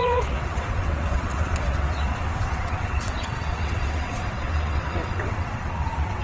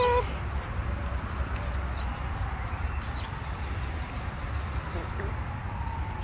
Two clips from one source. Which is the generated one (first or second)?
first